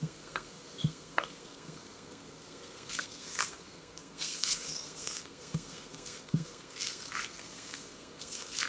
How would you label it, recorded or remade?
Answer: remade